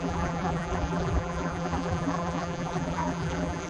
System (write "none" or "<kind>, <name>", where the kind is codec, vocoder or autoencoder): vocoder, BigVGAN v2